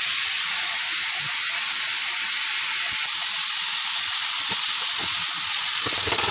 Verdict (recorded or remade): recorded